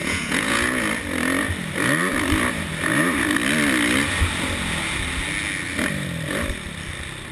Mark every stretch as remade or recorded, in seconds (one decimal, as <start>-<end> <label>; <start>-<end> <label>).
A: 0.0-0.8 remade; 0.8-7.3 recorded

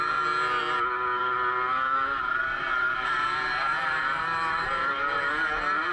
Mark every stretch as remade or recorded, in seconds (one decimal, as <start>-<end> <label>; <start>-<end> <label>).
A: 0.0-1.7 recorded; 1.7-5.2 remade; 5.2-5.9 recorded

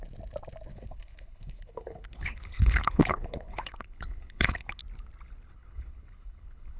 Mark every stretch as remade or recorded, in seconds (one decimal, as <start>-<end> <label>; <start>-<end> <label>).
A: 0.0-0.7 recorded; 0.7-4.8 remade; 4.8-5.5 recorded; 5.5-6.8 remade

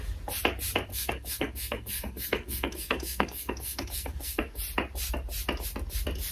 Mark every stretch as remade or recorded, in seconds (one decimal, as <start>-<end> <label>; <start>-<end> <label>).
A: 0.0-0.9 recorded; 0.9-4.6 remade; 4.6-6.3 recorded